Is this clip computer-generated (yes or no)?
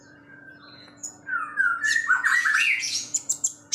yes